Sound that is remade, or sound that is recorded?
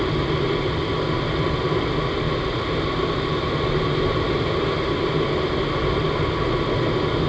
recorded